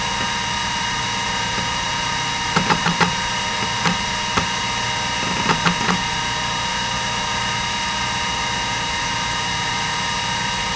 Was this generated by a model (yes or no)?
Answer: yes